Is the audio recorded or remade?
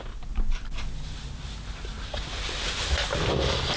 recorded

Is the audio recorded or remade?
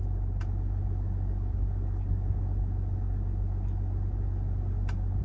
recorded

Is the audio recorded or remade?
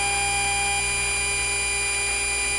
recorded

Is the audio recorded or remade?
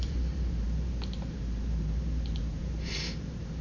remade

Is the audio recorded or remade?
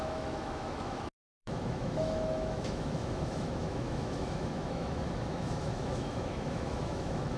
remade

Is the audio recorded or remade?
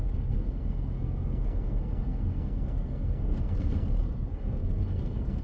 remade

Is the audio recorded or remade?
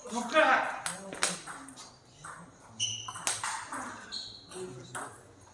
recorded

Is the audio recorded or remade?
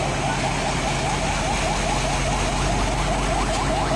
recorded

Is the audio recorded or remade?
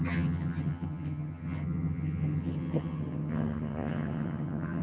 remade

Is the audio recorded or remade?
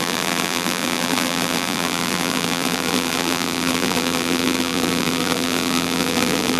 remade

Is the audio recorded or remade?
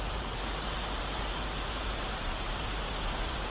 remade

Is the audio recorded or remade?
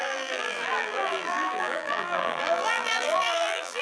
remade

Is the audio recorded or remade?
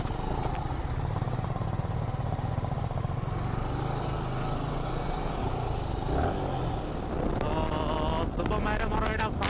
recorded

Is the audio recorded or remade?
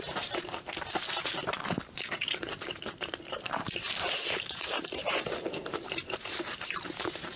remade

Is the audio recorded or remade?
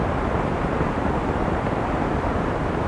remade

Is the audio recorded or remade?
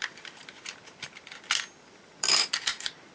remade